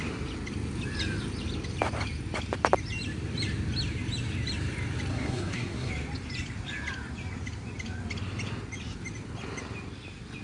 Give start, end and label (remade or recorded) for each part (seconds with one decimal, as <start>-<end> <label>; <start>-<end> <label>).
0.0-5.1 recorded; 5.1-5.9 remade; 5.9-10.4 recorded